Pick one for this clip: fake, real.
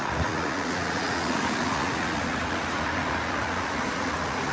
fake